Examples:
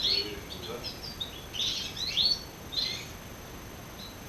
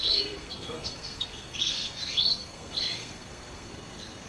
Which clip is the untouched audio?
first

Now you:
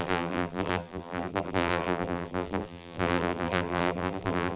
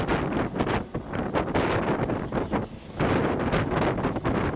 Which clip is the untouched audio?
second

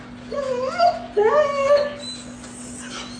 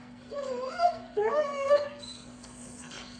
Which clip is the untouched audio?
first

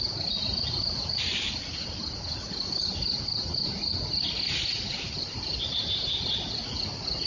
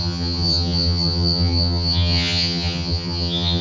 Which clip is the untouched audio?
first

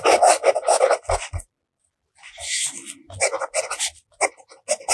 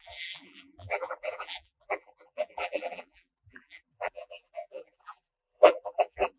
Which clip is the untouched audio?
first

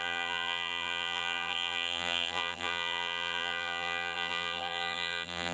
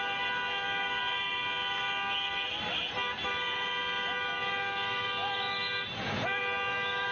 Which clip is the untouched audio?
second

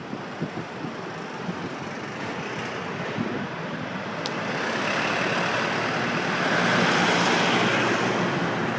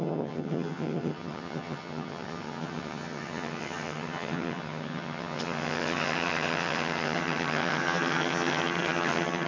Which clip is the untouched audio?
first